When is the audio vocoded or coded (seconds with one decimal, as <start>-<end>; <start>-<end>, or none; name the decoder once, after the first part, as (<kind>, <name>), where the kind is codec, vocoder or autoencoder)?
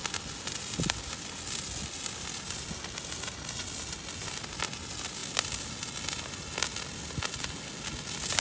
none